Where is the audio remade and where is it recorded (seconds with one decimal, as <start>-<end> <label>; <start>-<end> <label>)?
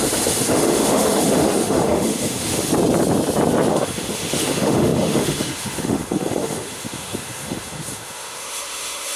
0.0-2.7 remade; 2.7-3.7 recorded; 3.7-9.2 remade